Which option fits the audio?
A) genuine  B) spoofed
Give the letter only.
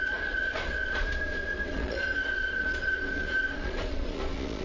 B